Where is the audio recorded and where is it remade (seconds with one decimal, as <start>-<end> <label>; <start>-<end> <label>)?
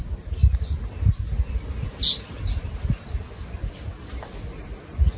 0.0-5.2 recorded